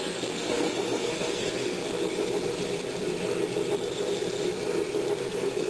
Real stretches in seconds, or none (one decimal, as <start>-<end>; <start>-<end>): 1.8-5.2